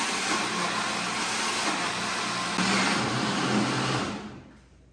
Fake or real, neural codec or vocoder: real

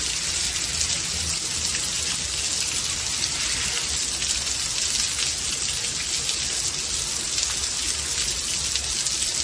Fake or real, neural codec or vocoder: real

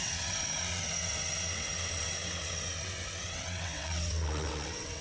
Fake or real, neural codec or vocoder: fake, vocoder, WaveNeXt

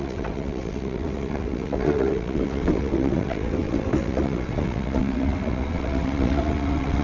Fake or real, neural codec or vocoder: fake, vocoder, WaveNeXt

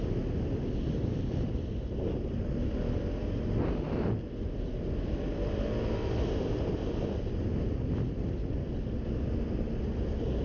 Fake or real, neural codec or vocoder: real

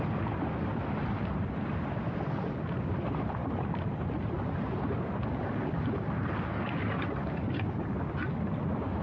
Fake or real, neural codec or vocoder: real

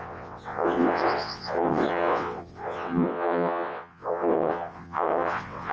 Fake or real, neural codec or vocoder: fake, vocoder, WaveNeXt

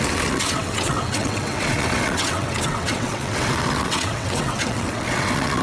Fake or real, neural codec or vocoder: fake, vocoder, WaveNeXt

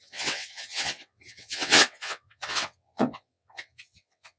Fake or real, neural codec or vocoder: fake, vocoder, WaveNeXt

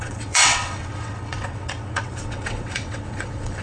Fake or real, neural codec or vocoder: fake, vocoder, WaveNeXt